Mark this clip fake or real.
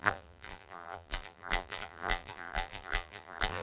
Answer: fake